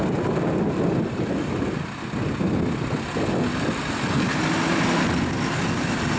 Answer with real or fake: real